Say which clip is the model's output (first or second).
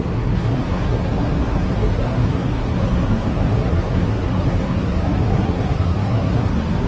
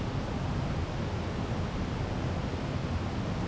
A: first